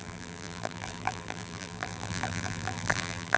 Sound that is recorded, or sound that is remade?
remade